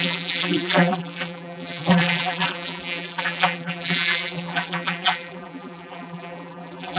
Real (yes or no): no